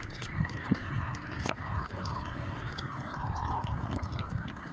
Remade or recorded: remade